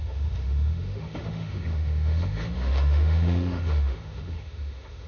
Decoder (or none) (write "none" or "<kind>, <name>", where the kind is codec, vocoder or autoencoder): autoencoder, DAC-VAE